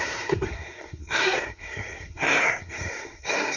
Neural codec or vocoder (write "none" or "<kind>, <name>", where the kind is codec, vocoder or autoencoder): codec, SNAC